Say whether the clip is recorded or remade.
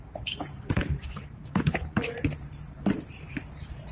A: remade